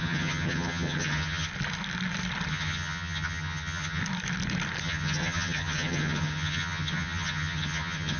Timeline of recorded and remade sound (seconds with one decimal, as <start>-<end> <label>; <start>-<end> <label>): 0.0-1.5 remade; 1.5-2.5 recorded; 2.5-4.0 remade; 4.0-4.8 recorded; 4.8-8.2 remade